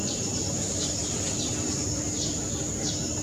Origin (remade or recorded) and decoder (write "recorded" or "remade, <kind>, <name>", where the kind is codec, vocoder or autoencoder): recorded